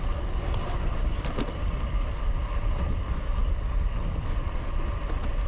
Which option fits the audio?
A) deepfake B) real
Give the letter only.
B